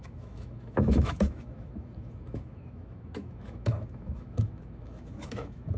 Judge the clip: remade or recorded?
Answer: remade